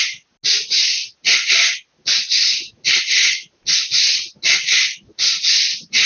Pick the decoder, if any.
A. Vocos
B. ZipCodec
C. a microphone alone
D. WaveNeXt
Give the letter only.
C